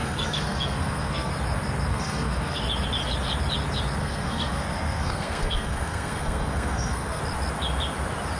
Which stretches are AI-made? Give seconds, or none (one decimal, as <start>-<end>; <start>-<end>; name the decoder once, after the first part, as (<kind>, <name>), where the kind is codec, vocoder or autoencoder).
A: 0.0-1.3 (codec, SNAC); 1.9-2.6; 4.0-7.2